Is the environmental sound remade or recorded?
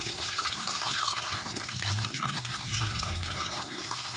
remade